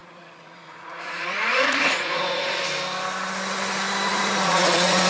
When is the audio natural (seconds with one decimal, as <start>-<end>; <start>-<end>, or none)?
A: 2.6-4.1